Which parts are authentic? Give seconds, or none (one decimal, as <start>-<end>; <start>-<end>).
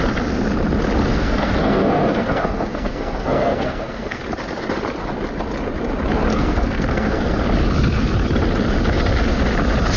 0.0-1.1; 4.2-6.3; 7.4-10.0